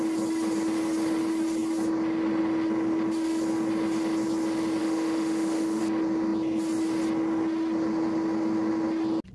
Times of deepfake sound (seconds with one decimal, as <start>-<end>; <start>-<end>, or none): 4.8-5.8